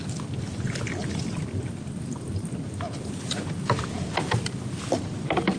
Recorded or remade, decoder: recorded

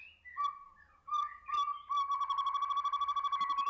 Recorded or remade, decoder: recorded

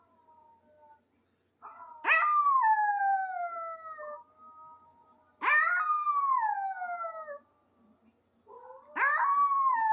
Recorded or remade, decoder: recorded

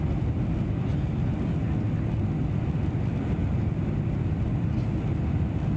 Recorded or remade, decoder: recorded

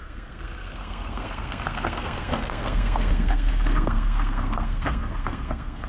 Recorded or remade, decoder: remade, codec, SNAC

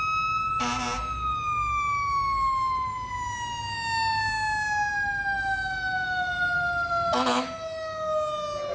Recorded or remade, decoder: recorded